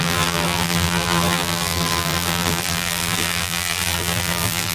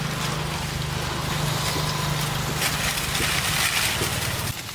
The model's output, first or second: first